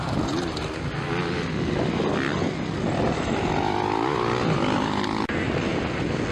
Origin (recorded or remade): recorded